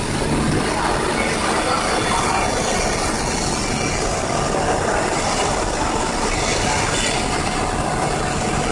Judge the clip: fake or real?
real